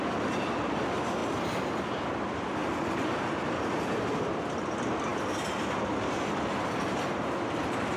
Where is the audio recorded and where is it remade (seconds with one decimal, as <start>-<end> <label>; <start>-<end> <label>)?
0.0-8.0 recorded